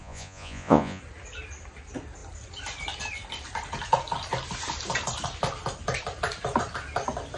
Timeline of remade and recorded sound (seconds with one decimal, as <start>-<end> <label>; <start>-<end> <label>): 0.0-1.0 remade; 1.0-7.4 recorded